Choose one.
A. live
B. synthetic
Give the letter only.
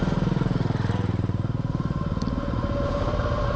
A